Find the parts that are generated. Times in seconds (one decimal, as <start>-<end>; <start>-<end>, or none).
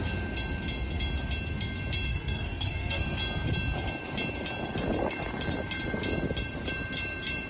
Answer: 2.1-3.0